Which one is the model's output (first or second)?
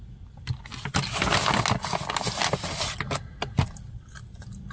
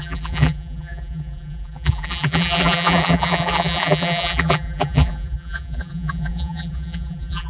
second